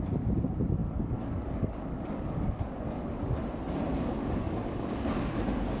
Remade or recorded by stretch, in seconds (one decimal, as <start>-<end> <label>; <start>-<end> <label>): 0.0-0.8 recorded; 0.8-3.4 remade; 3.4-3.9 recorded; 3.9-5.8 remade